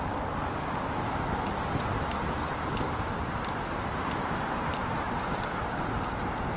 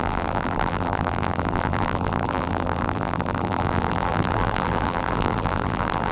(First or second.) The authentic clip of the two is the first